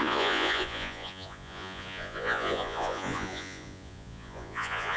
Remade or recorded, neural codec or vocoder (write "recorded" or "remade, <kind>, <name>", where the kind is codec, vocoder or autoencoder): remade, vocoder, Vocos